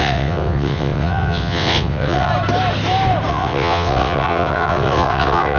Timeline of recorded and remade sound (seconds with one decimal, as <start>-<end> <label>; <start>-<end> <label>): 0.0-2.3 remade; 2.3-3.3 recorded; 3.3-5.6 remade